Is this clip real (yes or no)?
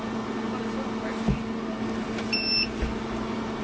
yes